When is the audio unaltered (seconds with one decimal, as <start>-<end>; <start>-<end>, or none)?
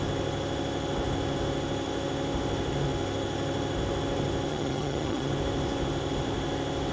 0.0-4.5; 5.3-6.9